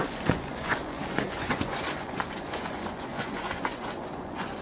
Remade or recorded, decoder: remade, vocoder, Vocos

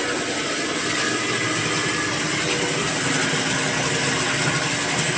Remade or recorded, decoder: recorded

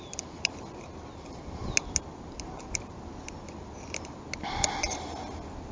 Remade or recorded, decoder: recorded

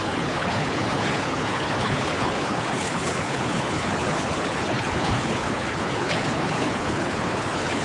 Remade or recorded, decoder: remade, codec, HILCodec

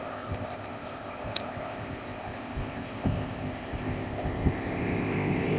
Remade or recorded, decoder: remade, codec, ZipCodec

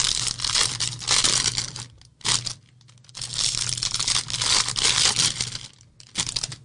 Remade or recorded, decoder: recorded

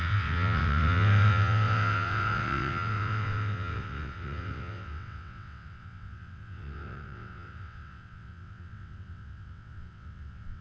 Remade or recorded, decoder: remade, vocoder, WaveNeXt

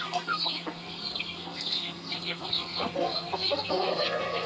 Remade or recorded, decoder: remade, codec, SNAC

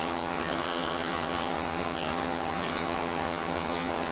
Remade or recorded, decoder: remade, vocoder, HiFi-GAN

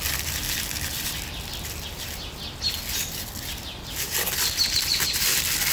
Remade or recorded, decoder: recorded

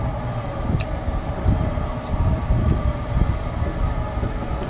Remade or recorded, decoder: recorded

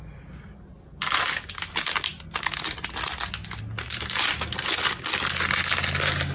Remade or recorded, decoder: recorded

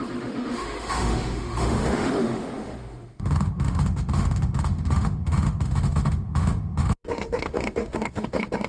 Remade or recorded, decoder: remade, autoencoder, DAC-VAE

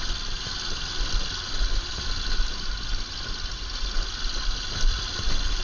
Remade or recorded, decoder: recorded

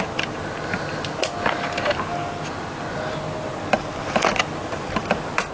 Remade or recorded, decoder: recorded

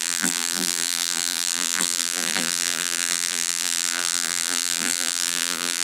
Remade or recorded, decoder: remade, vocoder, BigVGAN v2